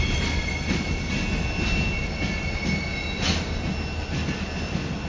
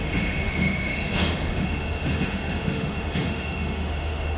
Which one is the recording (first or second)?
first